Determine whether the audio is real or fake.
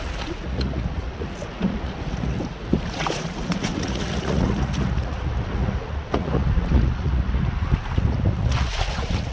fake